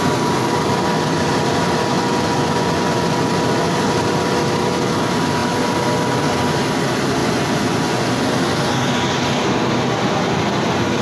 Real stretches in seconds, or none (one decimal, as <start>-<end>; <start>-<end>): 0.0-1.9; 3.3-7.2; 8.1-11.0